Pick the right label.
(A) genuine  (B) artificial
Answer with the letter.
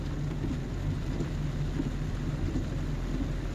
A